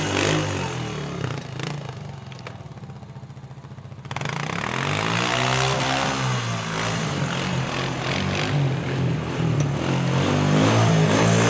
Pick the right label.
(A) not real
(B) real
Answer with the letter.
B